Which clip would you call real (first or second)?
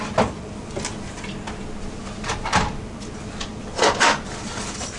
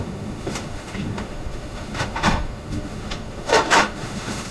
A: first